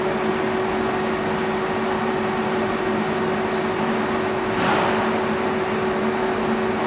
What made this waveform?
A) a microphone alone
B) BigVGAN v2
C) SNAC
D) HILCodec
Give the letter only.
A